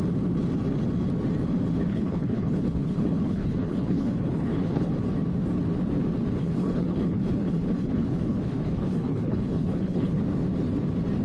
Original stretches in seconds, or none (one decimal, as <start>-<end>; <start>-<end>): 0.0-1.9; 4.9-6.4; 10.2-11.2